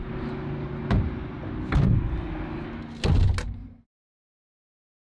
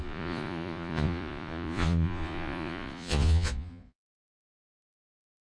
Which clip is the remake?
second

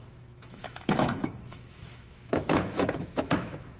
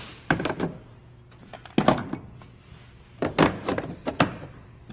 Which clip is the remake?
first